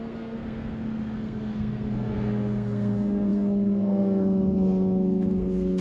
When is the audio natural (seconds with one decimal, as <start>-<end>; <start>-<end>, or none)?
none